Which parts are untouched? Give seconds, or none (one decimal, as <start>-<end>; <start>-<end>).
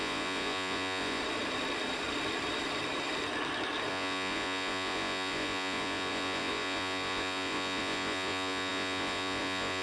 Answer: 1.2-3.9